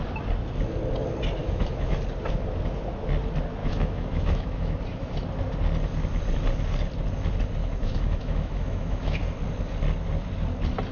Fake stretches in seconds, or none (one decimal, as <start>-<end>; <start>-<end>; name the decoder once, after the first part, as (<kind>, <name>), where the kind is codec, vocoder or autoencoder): 1.4-2.0 (autoencoder, DAC-VAE); 3.6-4.8; 7.6-9.2